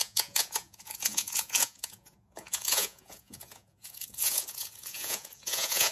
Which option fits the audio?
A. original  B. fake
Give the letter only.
B